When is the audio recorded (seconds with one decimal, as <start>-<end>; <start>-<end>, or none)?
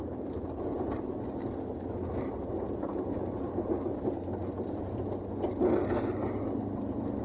0.0-7.2